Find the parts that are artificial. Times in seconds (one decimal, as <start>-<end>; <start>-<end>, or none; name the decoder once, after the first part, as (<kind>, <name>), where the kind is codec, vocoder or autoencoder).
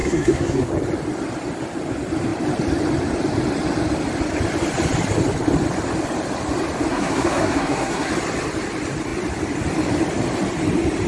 0.0-0.7 (codec, SNAC); 6.9-8.1